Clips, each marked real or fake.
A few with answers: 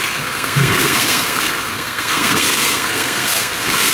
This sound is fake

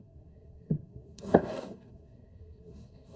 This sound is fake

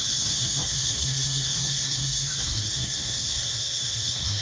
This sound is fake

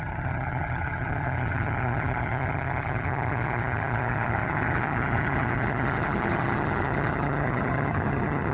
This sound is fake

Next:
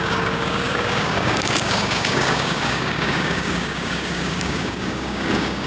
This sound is fake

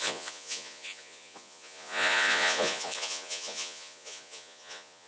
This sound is fake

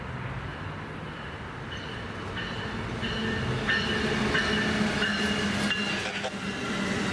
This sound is real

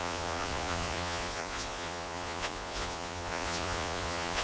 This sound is fake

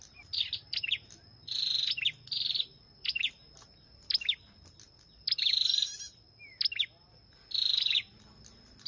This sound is real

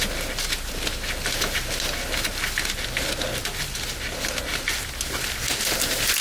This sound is real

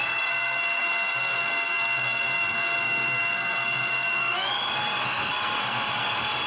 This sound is fake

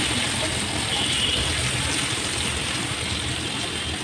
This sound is real